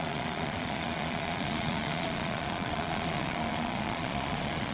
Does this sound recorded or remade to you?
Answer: remade